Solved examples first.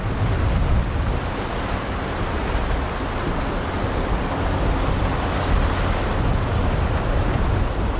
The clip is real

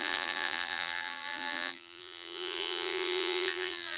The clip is fake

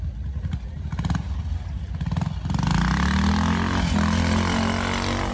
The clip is real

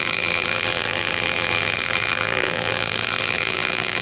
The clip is fake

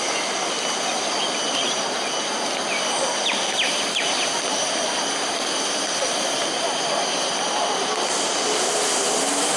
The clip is fake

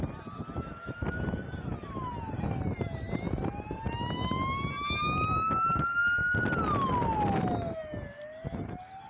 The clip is real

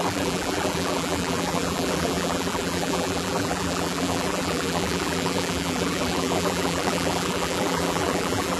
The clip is fake